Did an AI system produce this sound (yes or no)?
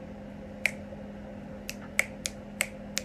no